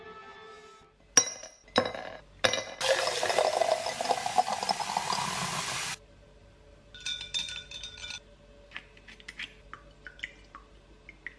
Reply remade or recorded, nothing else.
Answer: recorded